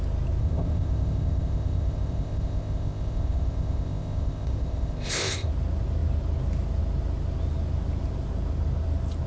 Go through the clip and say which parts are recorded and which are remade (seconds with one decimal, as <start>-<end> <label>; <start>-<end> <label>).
0.0-0.4 recorded; 0.4-5.5 remade; 5.5-9.3 recorded